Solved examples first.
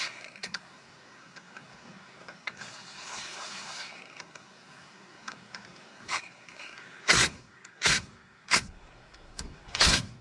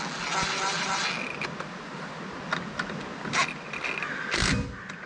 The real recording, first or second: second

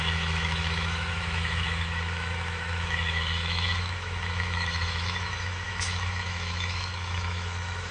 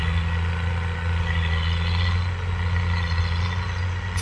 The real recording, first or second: second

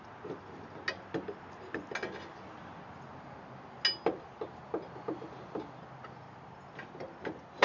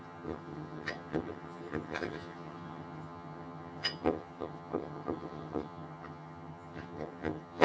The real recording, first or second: first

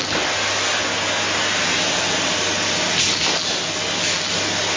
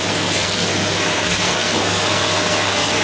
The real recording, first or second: first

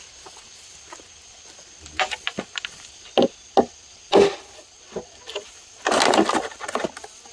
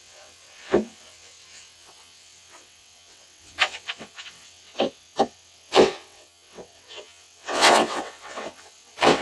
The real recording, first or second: first